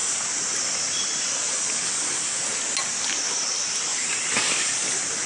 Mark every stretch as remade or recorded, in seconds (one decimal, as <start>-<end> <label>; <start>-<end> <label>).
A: 0.0-5.3 recorded